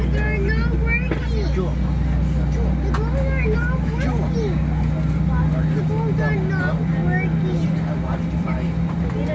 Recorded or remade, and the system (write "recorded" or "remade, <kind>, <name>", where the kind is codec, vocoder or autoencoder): recorded